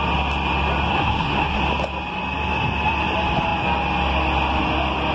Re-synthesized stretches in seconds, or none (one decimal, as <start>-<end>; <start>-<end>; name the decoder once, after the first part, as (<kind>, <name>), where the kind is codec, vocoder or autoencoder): 0.9-1.6 (codec, SNAC)